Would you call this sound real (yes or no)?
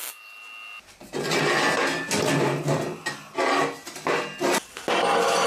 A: yes